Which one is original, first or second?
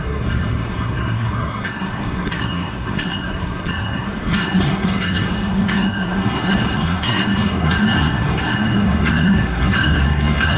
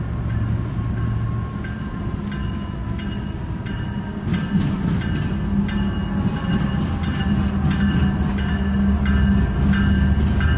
second